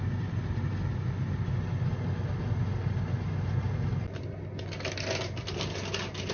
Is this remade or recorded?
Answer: recorded